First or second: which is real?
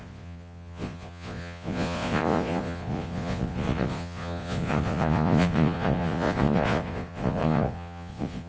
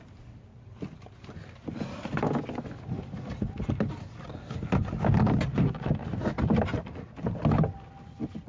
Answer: second